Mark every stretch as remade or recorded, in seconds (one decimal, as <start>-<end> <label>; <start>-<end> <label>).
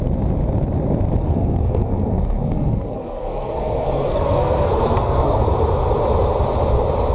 0.0-1.2 recorded; 1.2-5.5 remade; 5.5-7.1 recorded